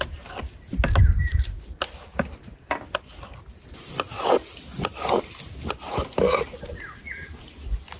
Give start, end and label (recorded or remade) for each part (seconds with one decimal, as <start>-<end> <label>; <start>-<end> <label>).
0.0-8.0 recorded